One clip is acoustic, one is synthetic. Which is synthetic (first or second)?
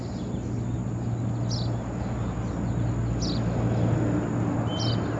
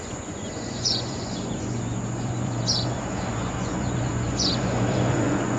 second